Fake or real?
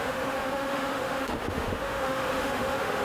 fake